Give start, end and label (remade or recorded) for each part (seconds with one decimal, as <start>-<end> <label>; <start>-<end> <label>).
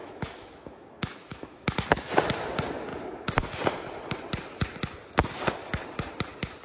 0.0-2.1 remade; 2.1-6.6 recorded